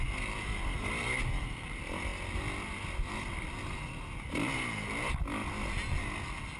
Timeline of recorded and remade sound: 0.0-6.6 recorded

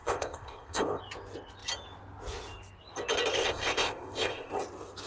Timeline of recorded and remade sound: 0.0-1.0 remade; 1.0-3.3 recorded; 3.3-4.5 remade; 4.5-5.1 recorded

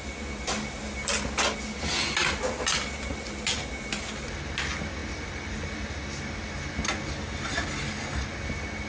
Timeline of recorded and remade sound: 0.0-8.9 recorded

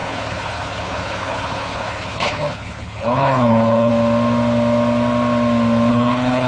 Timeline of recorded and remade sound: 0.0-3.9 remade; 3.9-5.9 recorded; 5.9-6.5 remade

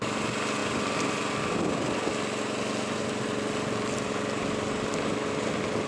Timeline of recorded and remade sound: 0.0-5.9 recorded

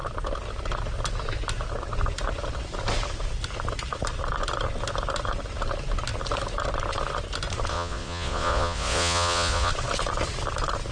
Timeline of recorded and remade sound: 0.0-7.7 recorded; 7.7-9.7 remade; 9.7-10.9 recorded